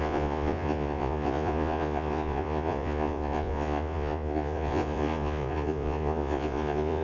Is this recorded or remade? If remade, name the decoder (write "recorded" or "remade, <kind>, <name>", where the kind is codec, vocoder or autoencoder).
remade, vocoder, Vocos